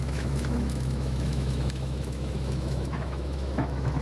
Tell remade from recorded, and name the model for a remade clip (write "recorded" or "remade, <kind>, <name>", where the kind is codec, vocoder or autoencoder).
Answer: remade, autoencoder, DAC-VAE